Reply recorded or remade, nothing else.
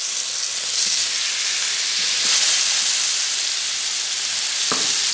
recorded